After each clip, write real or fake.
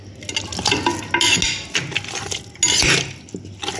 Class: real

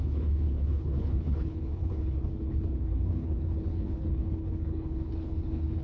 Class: fake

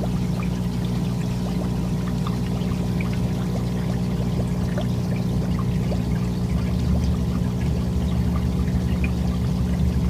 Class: real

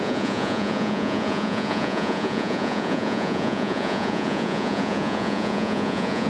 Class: fake